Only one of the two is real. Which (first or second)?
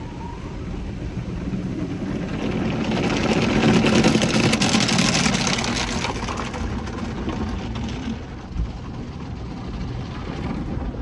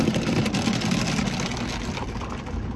first